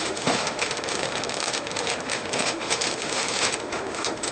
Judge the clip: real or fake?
fake